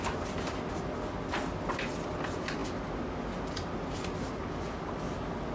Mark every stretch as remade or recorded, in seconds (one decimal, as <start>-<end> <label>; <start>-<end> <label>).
0.0-5.5 recorded